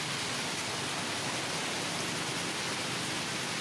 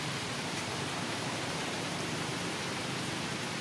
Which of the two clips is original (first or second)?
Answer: first